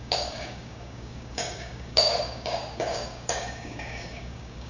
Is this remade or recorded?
remade